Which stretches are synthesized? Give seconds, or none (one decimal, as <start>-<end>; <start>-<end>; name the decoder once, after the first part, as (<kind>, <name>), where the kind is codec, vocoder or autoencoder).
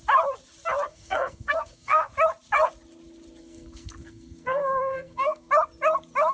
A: 0.9-2.1 (codec, SNAC); 3.4-5.5